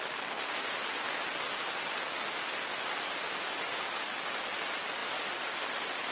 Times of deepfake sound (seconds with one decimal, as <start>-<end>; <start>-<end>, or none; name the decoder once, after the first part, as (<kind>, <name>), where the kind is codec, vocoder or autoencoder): none